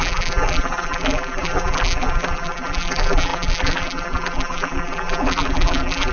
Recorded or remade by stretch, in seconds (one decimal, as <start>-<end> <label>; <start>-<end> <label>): 0.0-6.1 remade